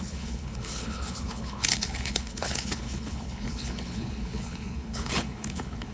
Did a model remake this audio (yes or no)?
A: yes